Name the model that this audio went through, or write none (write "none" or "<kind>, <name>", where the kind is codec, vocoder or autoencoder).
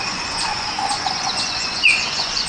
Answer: vocoder, Vocos